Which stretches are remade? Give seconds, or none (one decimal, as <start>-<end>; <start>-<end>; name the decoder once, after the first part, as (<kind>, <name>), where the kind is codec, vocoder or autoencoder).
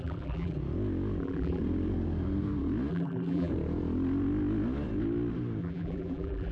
0.0-0.6 (vocoder, BigVGAN v2); 1.2-1.6; 2.9-3.5; 5.6-6.5